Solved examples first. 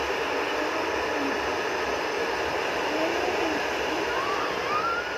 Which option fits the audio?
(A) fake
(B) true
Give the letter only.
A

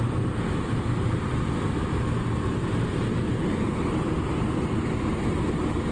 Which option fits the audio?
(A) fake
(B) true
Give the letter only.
B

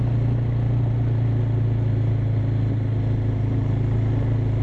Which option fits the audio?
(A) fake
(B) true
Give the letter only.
B